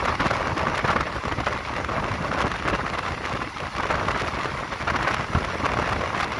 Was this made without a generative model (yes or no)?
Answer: yes